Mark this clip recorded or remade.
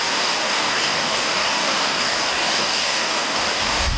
remade